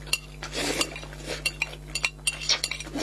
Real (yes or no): yes